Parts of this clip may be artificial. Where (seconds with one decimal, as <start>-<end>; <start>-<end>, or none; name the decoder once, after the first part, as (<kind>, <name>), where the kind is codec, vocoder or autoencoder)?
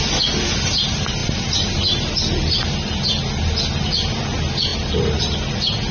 1.2-2.1 (vocoder, BigVGAN v2); 4.7-5.2